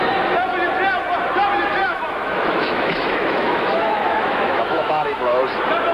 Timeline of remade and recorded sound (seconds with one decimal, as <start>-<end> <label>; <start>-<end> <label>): 0.0-1.9 recorded; 1.9-5.4 remade; 5.4-5.9 recorded